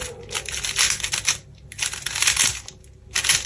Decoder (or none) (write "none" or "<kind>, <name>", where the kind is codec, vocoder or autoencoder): none